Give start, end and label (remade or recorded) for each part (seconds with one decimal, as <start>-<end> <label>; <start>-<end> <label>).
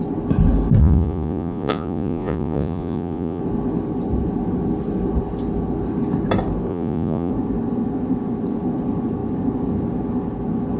0.0-0.8 recorded; 0.8-3.4 remade; 3.4-6.7 recorded; 6.7-7.3 remade; 7.3-10.8 recorded